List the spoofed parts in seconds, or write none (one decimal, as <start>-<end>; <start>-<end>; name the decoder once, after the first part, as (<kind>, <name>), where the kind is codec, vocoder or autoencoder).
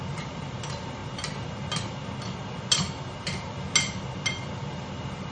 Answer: none